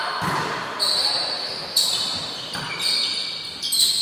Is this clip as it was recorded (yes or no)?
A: yes